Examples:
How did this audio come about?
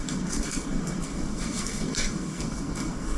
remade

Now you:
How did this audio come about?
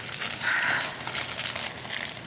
recorded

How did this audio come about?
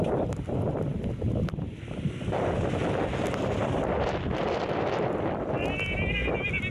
recorded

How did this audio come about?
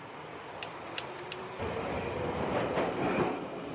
recorded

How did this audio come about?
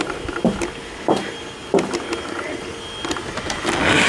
recorded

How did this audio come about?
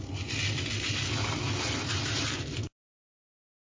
recorded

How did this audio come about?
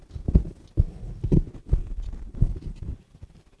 recorded